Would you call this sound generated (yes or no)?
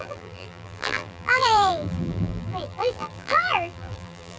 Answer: yes